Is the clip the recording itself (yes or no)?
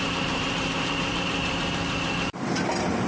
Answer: no